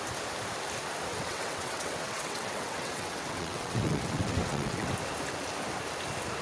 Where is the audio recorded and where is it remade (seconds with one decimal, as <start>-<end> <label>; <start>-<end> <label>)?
0.0-1.1 recorded; 1.1-4.9 remade; 4.9-6.4 recorded